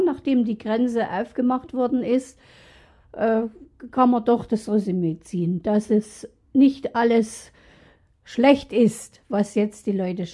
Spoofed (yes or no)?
no